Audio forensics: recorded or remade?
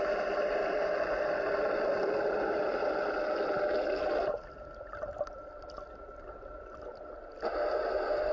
recorded